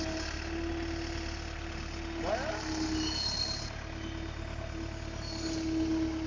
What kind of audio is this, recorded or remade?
recorded